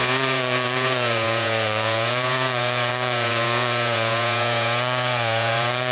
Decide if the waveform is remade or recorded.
remade